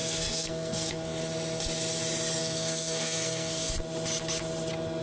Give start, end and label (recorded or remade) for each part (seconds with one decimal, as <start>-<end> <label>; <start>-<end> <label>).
0.0-1.2 remade; 1.2-2.4 recorded; 2.4-3.7 remade; 3.7-5.0 recorded